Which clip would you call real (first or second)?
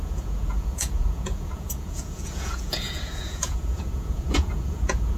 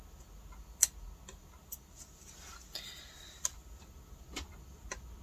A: second